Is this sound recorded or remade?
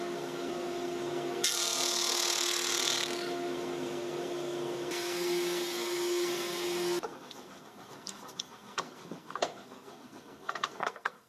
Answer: remade